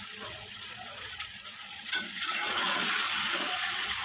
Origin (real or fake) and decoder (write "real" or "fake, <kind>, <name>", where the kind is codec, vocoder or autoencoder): fake, vocoder, Vocos